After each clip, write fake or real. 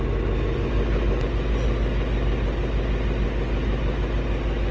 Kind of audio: real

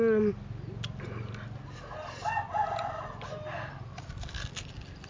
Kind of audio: real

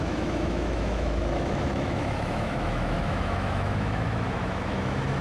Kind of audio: fake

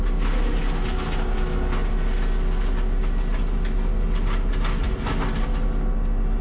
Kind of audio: real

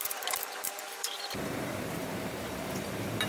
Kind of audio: fake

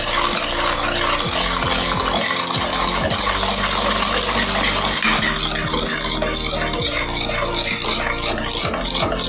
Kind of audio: real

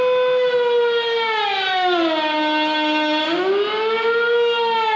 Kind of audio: real